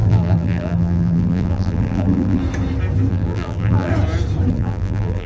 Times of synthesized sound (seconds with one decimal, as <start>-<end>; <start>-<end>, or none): 0.0-2.4; 3.1-3.9; 4.5-5.3